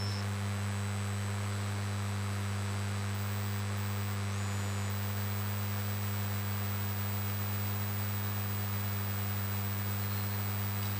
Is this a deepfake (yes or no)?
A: no